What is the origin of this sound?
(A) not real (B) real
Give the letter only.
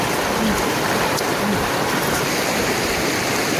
B